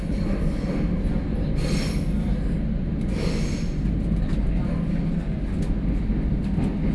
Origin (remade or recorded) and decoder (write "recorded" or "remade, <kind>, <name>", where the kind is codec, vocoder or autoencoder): recorded